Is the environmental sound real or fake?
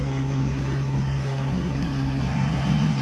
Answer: fake